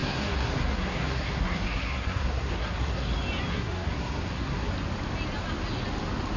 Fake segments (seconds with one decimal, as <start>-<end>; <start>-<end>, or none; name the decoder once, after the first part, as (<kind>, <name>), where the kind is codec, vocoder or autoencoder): 0.0-3.1 (codec, SNAC); 3.5-4.7